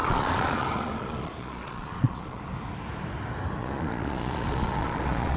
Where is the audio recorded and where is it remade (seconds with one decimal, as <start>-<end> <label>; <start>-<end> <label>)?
0.0-2.4 remade; 2.4-3.6 recorded; 3.6-5.4 remade